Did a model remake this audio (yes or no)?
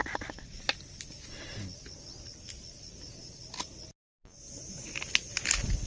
no